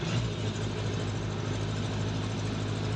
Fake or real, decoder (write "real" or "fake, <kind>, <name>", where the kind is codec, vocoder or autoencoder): real